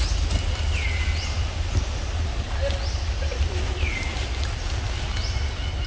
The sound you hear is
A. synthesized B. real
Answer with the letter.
B